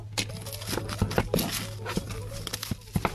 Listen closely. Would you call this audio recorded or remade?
recorded